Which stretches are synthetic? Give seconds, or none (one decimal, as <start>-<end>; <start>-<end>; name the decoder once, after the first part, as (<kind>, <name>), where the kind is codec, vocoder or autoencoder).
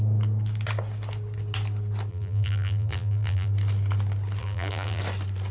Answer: 2.1-3.5 (vocoder, BigVGAN v2); 4.4-5.0